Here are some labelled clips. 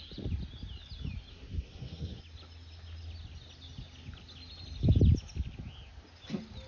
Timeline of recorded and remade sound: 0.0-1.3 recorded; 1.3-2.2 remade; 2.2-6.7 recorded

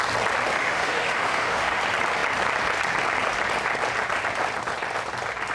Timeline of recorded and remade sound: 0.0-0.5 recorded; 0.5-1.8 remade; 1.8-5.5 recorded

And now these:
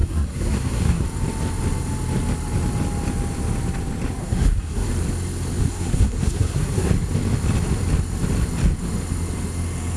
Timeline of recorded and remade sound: 0.0-1.0 remade; 1.0-4.2 recorded; 4.2-4.9 remade; 4.9-5.6 recorded; 5.6-6.9 remade; 6.9-10.0 recorded

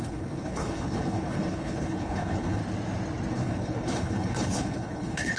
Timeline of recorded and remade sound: 0.0-2.6 remade; 2.6-3.3 recorded; 3.3-5.4 remade

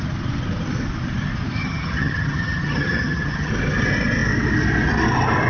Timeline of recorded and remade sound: 0.0-1.6 recorded; 1.6-3.5 remade; 3.5-5.5 recorded